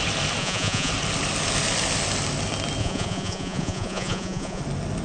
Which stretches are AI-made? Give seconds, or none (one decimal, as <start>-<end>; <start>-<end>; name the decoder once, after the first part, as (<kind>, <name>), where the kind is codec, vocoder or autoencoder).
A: 0.4-0.9 (vocoder, Vocos); 2.8-4.6